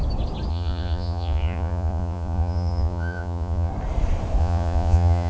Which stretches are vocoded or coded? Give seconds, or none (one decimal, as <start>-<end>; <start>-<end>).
0.5-3.7; 4.4-5.3